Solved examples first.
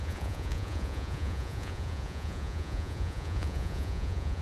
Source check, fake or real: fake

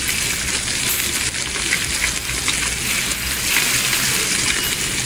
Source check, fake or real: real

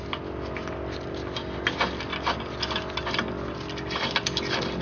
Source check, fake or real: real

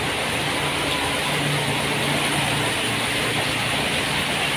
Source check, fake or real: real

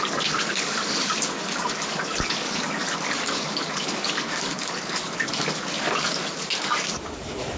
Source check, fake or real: fake